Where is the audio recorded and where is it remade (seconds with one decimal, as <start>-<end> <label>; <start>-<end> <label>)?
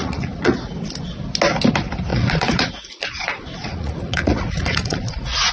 0.0-0.7 remade; 0.7-2.1 recorded; 2.1-5.5 remade